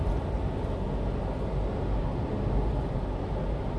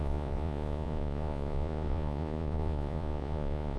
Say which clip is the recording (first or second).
first